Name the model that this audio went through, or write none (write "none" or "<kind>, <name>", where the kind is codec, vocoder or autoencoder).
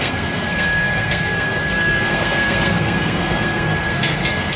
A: codec, SNAC